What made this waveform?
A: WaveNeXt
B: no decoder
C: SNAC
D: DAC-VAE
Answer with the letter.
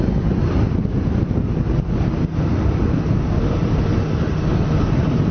B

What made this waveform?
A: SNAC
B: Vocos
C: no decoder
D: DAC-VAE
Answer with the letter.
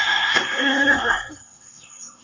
A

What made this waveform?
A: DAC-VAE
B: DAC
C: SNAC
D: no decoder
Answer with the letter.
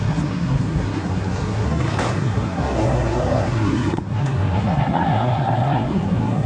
C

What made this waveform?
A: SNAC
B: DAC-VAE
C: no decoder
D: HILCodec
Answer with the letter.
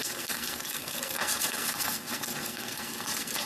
A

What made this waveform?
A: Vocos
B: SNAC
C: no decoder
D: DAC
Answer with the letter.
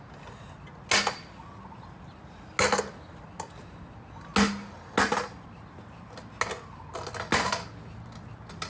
C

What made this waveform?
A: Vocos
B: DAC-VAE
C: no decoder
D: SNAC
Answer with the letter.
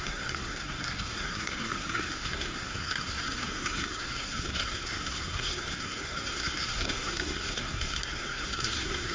D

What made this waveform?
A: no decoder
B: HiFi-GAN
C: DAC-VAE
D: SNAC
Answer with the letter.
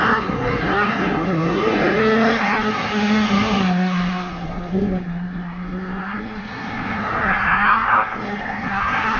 D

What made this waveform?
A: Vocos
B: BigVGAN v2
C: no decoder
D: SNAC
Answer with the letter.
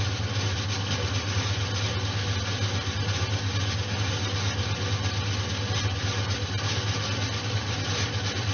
C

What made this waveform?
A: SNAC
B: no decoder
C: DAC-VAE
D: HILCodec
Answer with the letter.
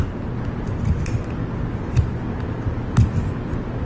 B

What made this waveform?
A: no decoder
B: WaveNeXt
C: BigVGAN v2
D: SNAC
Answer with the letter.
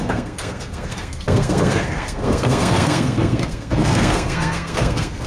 D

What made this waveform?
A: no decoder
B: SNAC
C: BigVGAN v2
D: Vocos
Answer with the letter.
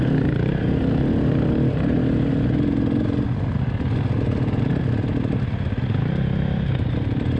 A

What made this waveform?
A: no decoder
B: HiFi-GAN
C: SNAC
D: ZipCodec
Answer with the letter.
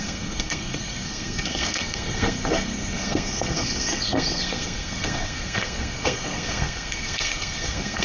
C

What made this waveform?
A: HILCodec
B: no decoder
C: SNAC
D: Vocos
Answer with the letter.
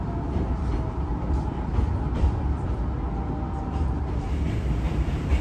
B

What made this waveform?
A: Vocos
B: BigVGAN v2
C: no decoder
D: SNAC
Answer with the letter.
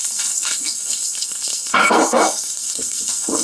D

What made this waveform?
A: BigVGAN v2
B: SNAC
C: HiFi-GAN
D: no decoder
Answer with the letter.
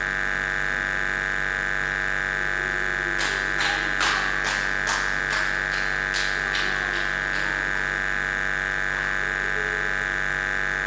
D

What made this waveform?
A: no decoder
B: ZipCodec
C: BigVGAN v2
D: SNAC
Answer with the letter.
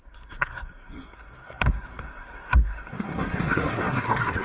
D